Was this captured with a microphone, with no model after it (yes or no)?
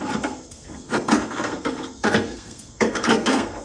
no